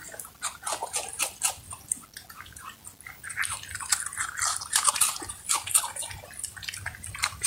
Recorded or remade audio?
recorded